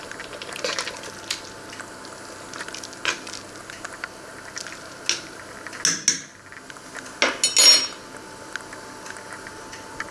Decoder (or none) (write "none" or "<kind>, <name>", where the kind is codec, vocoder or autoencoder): none